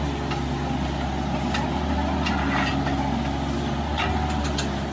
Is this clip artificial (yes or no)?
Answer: no